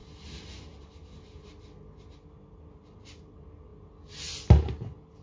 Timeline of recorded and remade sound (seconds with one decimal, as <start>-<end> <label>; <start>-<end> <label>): 0.0-5.2 recorded